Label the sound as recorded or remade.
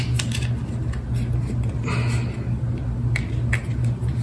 recorded